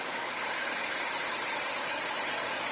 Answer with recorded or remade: recorded